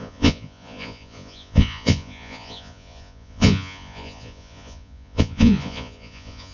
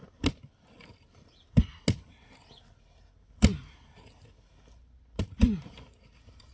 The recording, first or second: second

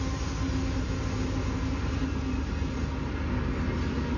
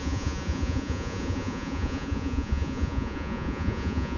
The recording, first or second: first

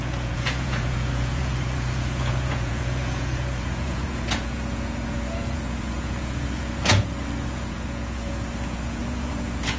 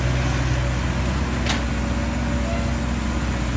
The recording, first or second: second